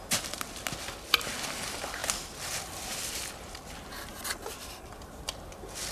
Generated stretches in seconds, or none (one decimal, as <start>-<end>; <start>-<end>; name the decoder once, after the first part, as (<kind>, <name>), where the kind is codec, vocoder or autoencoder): 2.0-5.5 (vocoder, BigVGAN v2)